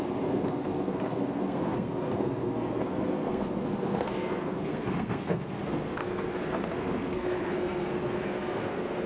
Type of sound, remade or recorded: remade